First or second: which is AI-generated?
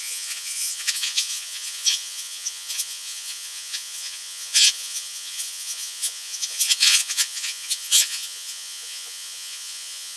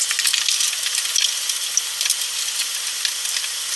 first